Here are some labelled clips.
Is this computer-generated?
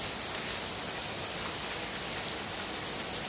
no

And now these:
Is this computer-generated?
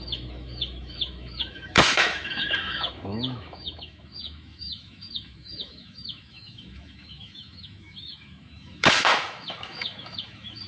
yes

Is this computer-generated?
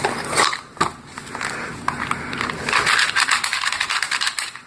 no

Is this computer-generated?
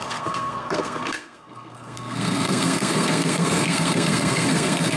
yes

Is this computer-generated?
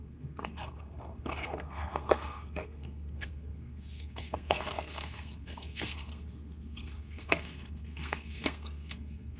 yes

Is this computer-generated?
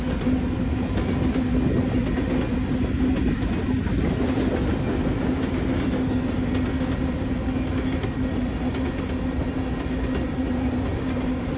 no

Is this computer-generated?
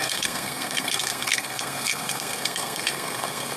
yes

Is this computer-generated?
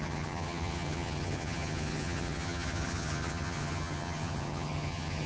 yes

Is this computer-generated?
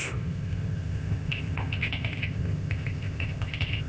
yes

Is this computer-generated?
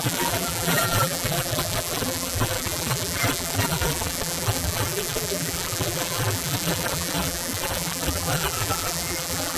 yes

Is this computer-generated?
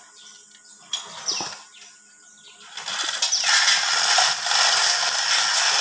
no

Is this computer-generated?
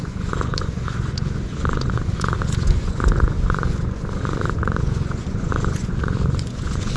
yes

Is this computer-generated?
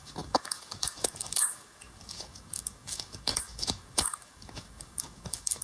yes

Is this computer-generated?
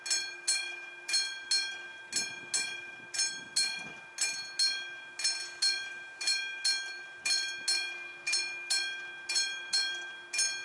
no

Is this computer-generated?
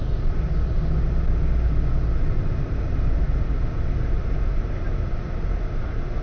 no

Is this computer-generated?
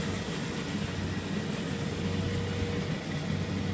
no